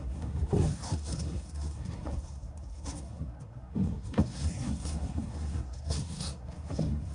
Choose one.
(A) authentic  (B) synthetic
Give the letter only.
B